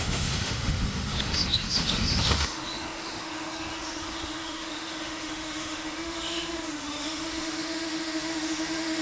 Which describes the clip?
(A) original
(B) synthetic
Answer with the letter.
B